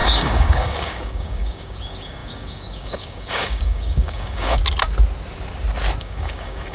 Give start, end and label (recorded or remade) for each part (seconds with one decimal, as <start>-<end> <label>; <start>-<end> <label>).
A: 0.0-4.6 remade; 4.6-6.0 recorded; 6.0-6.7 remade